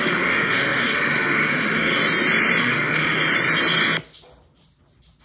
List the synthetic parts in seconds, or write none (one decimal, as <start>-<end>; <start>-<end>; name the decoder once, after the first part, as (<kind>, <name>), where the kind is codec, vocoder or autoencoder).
0.0-2.0 (autoencoder, DAC-VAE); 2.6-3.2